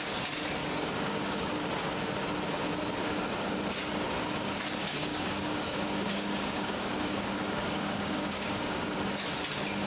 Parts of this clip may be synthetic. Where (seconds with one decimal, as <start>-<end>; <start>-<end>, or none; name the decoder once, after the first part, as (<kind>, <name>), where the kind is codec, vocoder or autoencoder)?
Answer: 0.6-1.5 (codec, DAC); 4.8-8.9